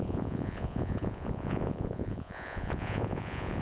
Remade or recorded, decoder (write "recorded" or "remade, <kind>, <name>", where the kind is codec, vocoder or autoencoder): remade, vocoder, Vocos